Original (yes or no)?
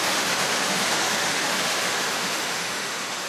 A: no